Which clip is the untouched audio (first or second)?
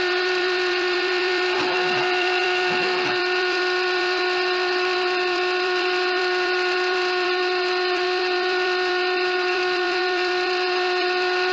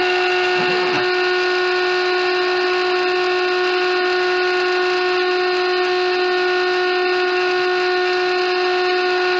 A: second